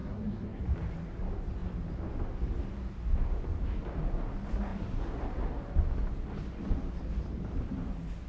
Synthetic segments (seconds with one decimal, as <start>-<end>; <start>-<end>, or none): 0.0-0.6

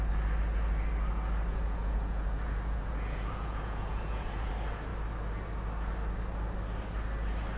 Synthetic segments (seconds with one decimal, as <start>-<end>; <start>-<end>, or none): 1.5-4.5